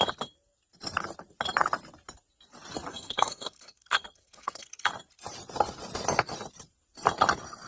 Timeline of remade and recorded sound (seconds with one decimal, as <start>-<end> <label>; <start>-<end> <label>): 0.0-2.9 recorded; 2.9-4.9 remade; 4.9-7.7 recorded